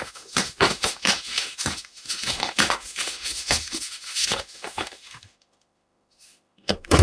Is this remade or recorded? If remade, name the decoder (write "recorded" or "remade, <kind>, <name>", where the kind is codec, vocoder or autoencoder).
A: remade, autoencoder, DAC-VAE